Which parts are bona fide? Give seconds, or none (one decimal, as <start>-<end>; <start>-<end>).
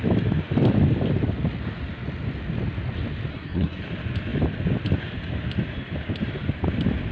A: 0.0-3.3; 3.8-7.1